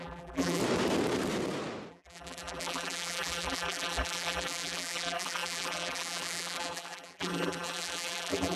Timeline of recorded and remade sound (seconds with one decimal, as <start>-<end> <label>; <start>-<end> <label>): 0.0-0.6 remade; 0.6-1.9 recorded; 1.9-8.6 remade